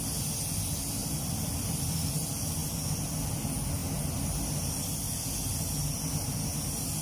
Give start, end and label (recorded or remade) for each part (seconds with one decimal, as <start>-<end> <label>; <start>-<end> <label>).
0.0-1.0 recorded; 1.0-1.7 remade; 1.7-7.0 recorded